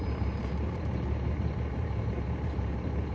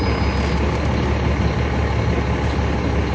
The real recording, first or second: second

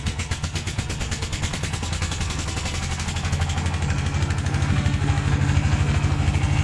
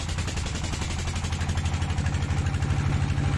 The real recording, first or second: second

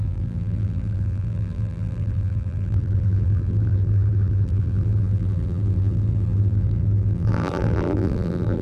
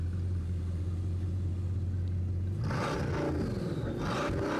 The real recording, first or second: second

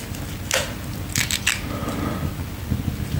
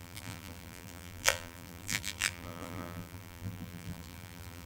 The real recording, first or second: first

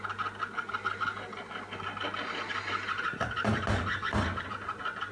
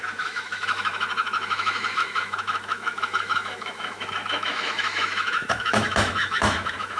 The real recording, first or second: first